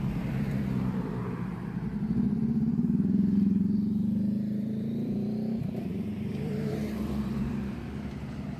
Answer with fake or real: fake